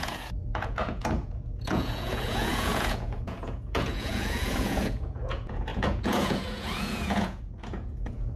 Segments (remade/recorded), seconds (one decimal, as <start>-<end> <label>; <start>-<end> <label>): 0.0-8.4 remade